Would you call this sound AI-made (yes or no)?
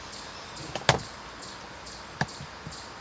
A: no